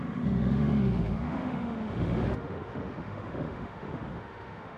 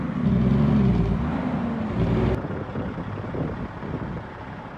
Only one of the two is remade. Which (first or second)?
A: first